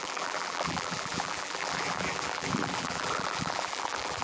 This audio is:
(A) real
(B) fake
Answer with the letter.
B